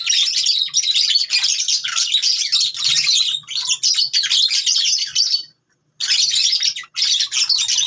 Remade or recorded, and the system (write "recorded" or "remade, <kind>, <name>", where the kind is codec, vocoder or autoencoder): recorded